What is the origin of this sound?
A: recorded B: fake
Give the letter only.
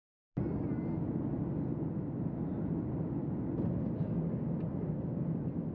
A